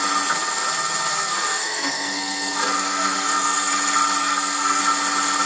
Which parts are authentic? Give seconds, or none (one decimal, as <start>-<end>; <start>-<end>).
0.0-1.1; 3.7-4.2; 4.8-5.5